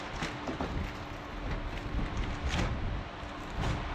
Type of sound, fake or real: real